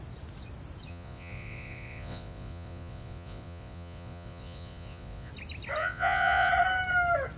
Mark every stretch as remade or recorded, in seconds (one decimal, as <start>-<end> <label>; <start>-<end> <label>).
0.0-0.9 recorded; 0.9-5.3 remade; 5.3-5.8 recorded; 5.8-6.5 remade; 6.5-7.4 recorded

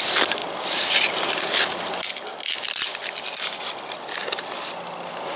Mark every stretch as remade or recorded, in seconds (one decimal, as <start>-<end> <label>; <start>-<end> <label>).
0.0-5.4 recorded

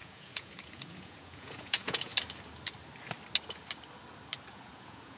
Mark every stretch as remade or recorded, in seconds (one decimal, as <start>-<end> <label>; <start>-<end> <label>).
0.0-2.1 remade; 2.1-4.5 recorded; 4.5-5.2 remade

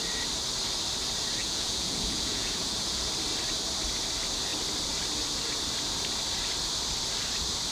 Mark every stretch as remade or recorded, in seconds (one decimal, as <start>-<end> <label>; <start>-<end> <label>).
0.0-1.4 recorded; 1.4-3.1 remade; 3.1-7.7 recorded

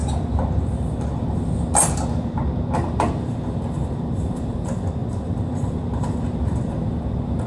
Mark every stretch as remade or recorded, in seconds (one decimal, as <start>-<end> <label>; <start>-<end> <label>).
0.0-7.5 recorded

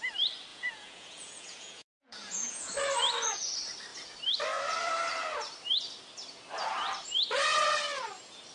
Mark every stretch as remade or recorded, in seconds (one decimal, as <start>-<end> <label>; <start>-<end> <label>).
0.0-0.5 recorded; 0.5-2.7 remade; 2.7-8.5 recorded